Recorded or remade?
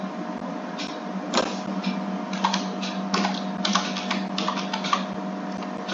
recorded